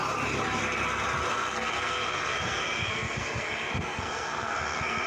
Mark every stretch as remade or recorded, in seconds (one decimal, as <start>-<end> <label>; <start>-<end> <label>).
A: 0.0-1.3 recorded; 1.3-5.1 remade